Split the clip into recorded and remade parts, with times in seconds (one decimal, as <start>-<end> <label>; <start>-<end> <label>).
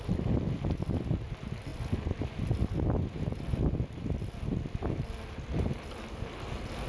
0.0-6.9 recorded